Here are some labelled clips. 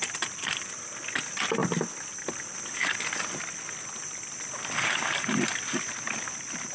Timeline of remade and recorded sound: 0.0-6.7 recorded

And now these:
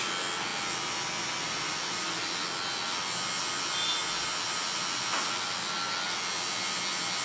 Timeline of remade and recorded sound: 0.0-7.2 recorded

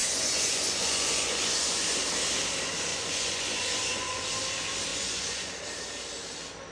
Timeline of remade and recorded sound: 0.0-2.0 remade; 2.0-2.9 recorded; 2.9-4.2 remade; 4.2-4.9 recorded; 4.9-5.5 remade; 5.5-6.7 recorded

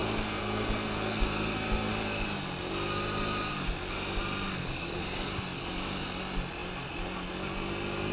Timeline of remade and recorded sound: 0.0-1.9 remade; 1.9-4.6 recorded; 4.6-5.3 remade; 5.3-8.1 recorded

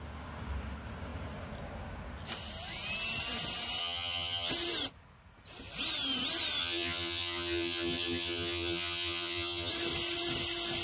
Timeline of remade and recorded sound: 0.0-3.8 recorded; 3.8-4.5 remade; 4.5-6.6 recorded; 6.6-9.7 remade; 9.7-10.8 recorded

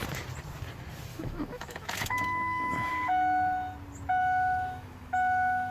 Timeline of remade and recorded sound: 0.0-1.1 recorded; 1.1-2.9 remade; 2.9-4.2 recorded; 4.2-5.7 remade

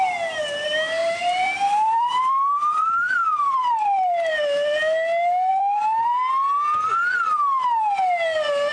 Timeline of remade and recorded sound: 0.0-1.0 recorded; 1.0-4.3 remade; 4.3-5.5 recorded; 5.5-6.2 remade; 6.2-8.7 recorded